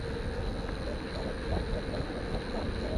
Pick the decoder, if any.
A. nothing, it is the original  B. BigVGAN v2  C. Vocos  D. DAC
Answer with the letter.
A